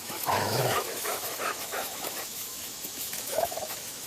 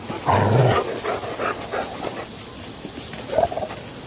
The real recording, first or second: second